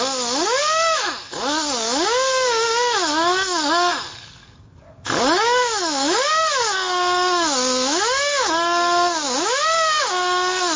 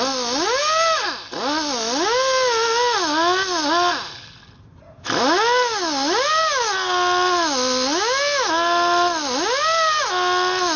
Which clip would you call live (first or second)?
second